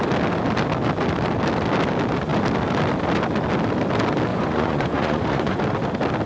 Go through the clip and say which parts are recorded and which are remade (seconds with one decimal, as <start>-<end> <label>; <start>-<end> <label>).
0.0-4.3 recorded; 4.3-5.6 remade; 5.6-6.3 recorded